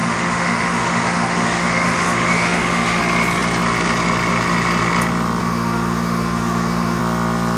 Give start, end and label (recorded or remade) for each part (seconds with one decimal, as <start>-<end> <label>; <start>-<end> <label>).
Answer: 0.0-3.0 remade; 3.0-5.4 recorded; 5.4-7.0 remade; 7.0-7.6 recorded